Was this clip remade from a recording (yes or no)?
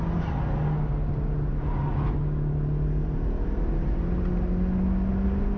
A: no